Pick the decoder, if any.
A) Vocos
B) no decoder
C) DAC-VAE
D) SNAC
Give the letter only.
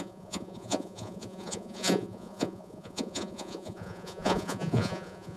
A